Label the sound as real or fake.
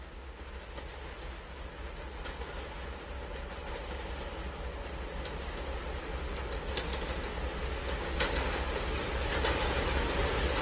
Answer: real